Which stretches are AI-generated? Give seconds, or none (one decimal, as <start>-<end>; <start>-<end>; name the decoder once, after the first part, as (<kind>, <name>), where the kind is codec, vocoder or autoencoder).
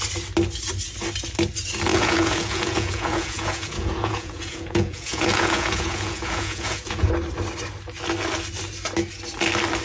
1.9-7.1 (vocoder, Vocos)